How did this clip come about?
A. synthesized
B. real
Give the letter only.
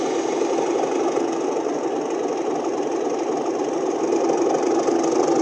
B